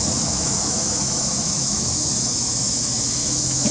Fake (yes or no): yes